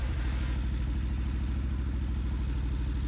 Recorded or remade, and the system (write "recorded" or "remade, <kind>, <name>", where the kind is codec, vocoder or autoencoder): recorded